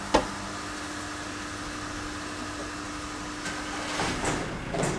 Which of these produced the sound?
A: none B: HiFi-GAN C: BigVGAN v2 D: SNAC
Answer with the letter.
A